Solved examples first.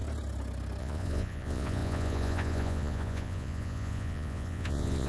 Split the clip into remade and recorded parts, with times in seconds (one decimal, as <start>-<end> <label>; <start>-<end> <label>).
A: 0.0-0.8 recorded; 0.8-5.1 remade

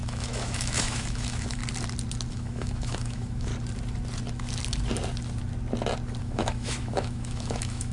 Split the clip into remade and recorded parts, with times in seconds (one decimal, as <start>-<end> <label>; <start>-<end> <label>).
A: 0.0-1.6 remade; 1.6-2.3 recorded; 2.3-3.5 remade; 3.5-6.2 recorded; 6.2-7.9 remade

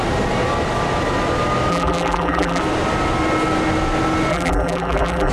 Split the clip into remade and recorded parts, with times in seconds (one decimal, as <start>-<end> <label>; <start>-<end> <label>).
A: 0.0-1.7 recorded; 1.7-2.6 remade; 2.6-4.3 recorded; 4.3-5.3 remade